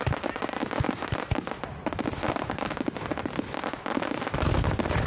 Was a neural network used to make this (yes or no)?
no